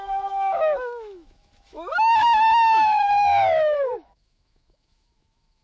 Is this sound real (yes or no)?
no